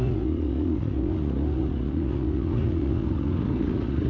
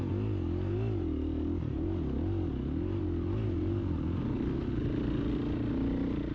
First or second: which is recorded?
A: second